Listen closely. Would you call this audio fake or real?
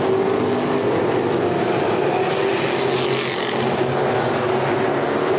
real